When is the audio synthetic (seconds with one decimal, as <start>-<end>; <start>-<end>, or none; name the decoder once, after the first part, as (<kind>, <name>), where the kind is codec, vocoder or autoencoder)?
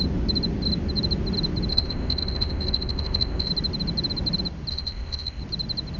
1.7-3.5 (codec, ZipCodec); 4.7-5.4